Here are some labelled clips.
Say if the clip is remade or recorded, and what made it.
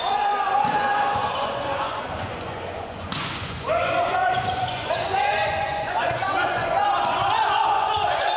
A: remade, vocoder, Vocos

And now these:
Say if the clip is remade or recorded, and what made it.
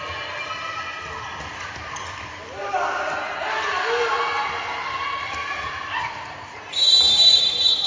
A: recorded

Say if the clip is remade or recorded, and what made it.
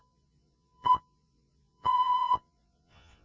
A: remade, vocoder, Vocos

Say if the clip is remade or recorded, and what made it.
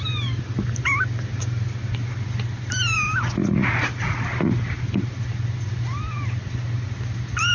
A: recorded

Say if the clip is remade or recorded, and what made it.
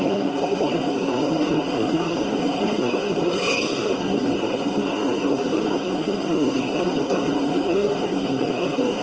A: remade, codec, SNAC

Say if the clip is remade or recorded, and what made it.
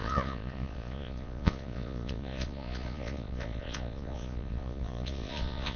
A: remade, vocoder, Vocos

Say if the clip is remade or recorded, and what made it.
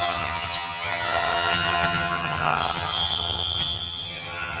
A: remade, vocoder, HiFi-GAN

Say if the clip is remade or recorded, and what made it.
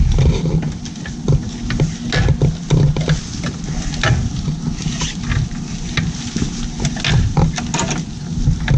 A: recorded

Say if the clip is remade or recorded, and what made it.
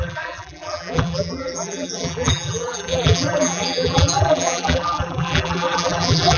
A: remade, vocoder, BigVGAN v2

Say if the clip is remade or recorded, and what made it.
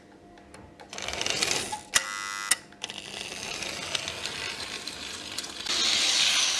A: recorded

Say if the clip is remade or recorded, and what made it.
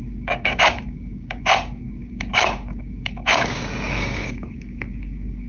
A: remade, codec, DAC